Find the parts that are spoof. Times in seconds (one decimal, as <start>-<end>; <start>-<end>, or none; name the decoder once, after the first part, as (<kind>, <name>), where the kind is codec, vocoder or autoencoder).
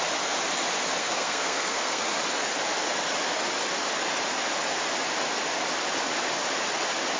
1.0-2.0 (codec, SNAC)